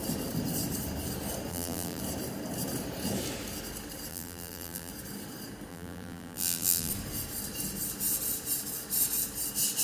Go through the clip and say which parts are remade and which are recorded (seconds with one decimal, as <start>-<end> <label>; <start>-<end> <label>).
0.0-1.5 recorded; 1.5-2.0 remade; 2.0-4.1 recorded; 4.1-4.9 remade; 4.9-5.7 recorded; 5.7-6.9 remade; 6.9-9.8 recorded